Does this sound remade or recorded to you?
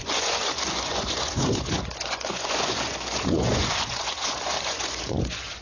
remade